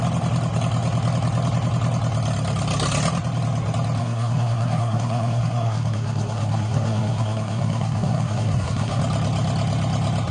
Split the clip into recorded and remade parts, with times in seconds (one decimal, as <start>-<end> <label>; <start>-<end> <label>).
0.0-4.0 recorded; 4.0-9.0 remade; 9.0-10.3 recorded